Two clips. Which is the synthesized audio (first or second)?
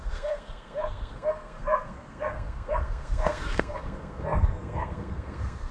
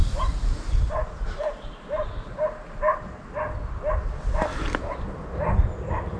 first